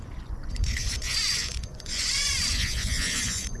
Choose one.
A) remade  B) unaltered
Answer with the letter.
A